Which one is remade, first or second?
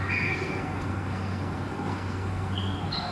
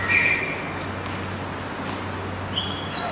first